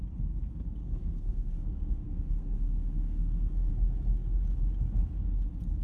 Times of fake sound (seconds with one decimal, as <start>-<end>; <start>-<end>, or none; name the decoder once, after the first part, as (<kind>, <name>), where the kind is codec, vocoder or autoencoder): 0.8-3.7 (codec, SNAC)